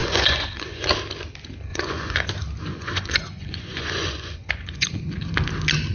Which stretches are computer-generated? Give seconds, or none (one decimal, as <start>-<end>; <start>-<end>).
0.0-0.9; 1.7-2.3; 2.7-5.0